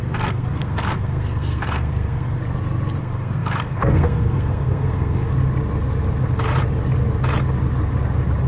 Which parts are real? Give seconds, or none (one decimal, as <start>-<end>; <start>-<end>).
2.4-3.0; 5.3-8.5